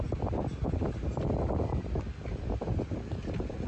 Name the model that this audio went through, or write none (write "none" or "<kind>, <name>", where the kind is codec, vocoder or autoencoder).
none